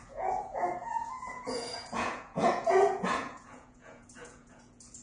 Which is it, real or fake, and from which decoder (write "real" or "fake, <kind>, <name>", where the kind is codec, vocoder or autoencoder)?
fake, vocoder, Vocos